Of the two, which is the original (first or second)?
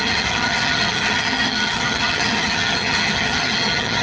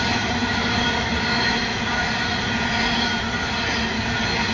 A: second